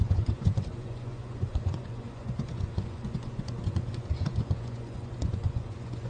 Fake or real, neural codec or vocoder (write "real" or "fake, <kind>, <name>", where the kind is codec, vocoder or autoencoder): fake, vocoder, Vocos